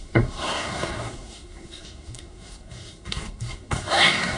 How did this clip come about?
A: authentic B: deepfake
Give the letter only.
B